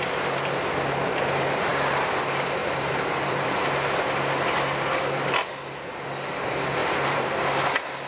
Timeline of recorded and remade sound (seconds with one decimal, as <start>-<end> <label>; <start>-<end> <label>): 0.0-2.6 recorded; 2.6-3.7 remade; 3.7-6.8 recorded; 6.8-7.4 remade; 7.4-8.1 recorded